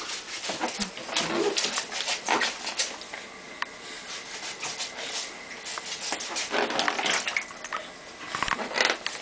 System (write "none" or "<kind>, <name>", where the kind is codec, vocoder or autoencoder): none